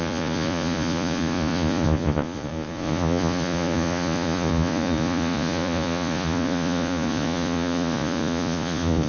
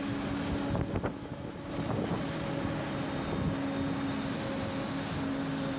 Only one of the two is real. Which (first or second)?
second